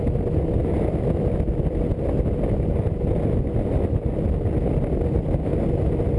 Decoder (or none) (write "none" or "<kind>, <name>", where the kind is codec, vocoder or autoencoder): none